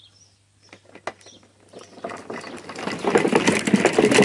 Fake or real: real